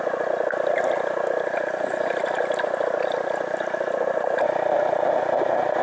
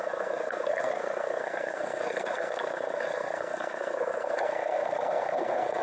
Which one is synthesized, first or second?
second